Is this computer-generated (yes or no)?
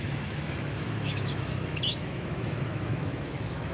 yes